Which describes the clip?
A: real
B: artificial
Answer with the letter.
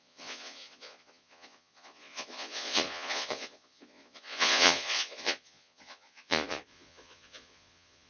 B